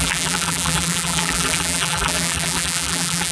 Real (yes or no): no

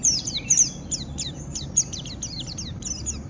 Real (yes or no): yes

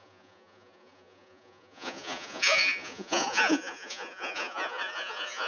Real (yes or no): no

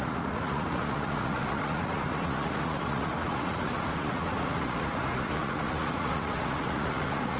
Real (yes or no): no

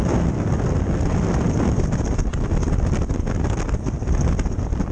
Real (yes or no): yes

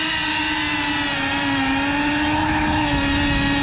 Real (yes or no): yes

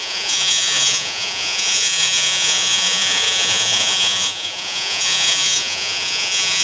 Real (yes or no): no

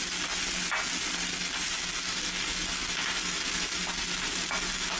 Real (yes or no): yes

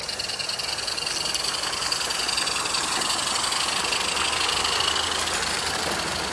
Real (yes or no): yes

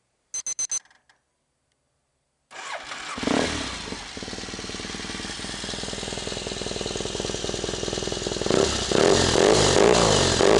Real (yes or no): yes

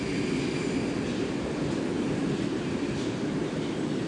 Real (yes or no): yes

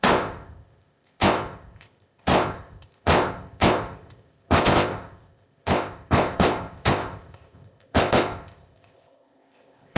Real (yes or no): no